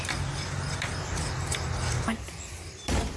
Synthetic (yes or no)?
no